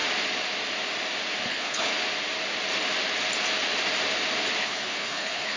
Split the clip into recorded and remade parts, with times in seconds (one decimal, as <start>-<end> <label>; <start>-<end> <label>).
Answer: 0.0-1.5 recorded; 1.5-1.9 remade; 1.9-4.6 recorded; 4.6-5.6 remade